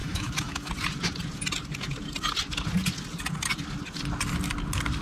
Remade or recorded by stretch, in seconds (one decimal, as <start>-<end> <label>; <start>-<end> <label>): 0.0-0.7 remade; 0.7-5.0 recorded